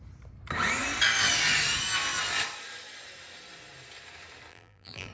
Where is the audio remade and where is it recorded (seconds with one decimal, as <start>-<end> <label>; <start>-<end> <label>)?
0.0-4.5 recorded; 4.5-5.1 remade